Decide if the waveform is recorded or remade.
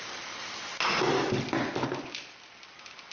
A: recorded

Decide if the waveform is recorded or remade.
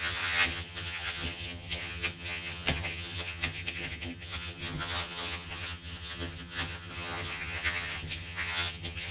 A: remade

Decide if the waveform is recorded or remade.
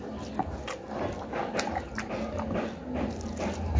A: recorded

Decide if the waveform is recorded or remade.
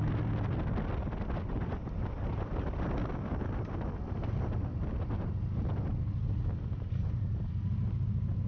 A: recorded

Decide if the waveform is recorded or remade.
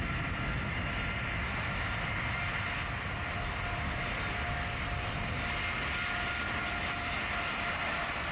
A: recorded